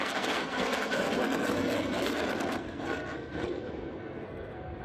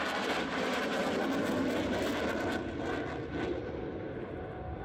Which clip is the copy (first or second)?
first